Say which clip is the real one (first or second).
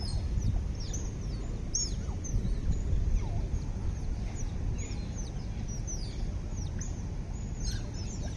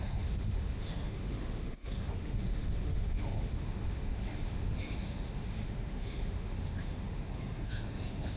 first